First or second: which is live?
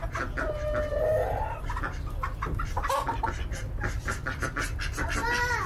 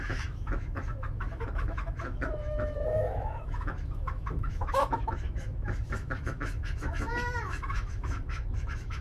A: first